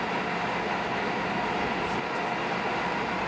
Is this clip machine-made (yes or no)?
no